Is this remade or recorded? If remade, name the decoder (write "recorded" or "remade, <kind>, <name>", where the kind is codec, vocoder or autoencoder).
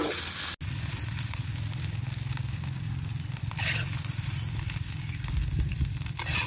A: recorded